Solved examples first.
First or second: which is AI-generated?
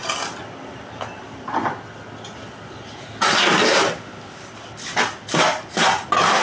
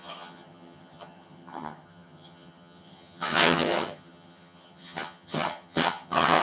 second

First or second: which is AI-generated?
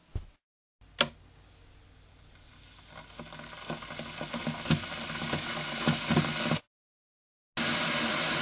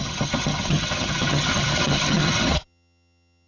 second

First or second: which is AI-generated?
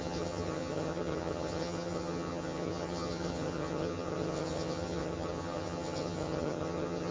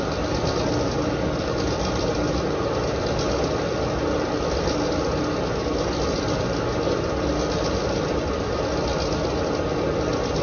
first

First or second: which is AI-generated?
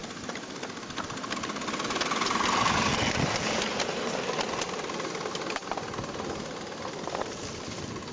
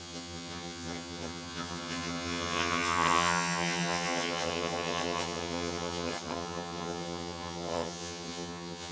second